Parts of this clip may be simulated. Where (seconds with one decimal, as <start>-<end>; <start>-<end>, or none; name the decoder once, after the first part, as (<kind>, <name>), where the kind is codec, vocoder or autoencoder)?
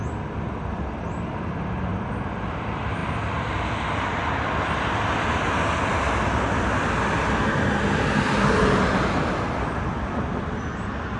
none